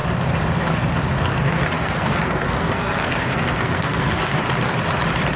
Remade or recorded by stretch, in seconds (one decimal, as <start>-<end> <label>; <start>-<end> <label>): 0.0-1.2 recorded; 1.2-4.4 remade; 4.4-5.4 recorded